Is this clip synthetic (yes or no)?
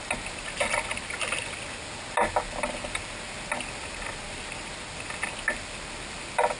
no